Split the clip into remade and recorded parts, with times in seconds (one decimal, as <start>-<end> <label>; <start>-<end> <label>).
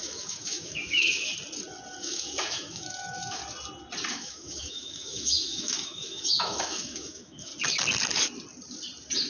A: 0.0-1.3 remade; 1.3-2.0 recorded; 2.0-3.4 remade; 3.4-4.1 recorded; 4.1-7.5 remade; 7.5-9.3 recorded